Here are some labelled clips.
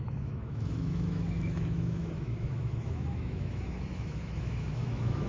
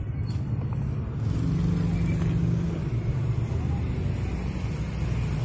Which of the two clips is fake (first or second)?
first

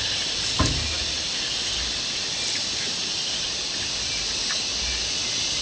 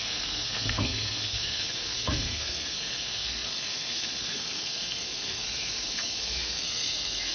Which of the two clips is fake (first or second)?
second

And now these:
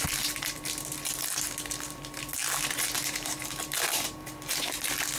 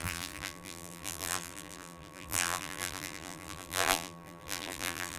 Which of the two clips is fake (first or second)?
second